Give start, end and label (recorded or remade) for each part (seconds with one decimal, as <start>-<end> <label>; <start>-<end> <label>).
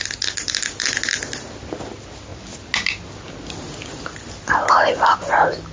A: 0.0-5.7 recorded